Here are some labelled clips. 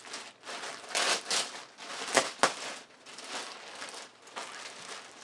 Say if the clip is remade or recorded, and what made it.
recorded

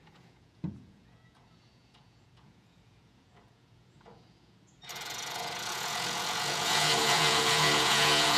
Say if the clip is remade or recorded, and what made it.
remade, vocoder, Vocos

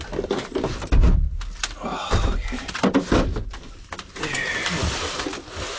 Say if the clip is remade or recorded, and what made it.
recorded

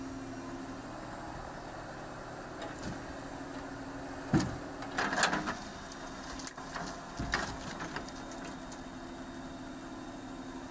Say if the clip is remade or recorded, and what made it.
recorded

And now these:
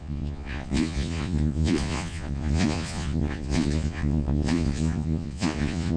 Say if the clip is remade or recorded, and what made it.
remade, vocoder, Vocos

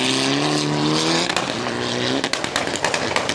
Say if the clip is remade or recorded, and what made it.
recorded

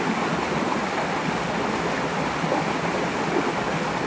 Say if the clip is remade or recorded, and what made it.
recorded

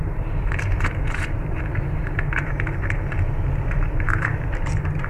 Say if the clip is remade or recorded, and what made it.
remade, vocoder, BigVGAN v2